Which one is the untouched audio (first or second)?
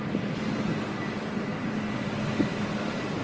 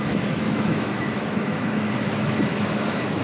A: first